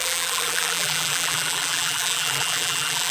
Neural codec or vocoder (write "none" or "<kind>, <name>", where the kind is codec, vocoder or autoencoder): vocoder, BigVGAN v2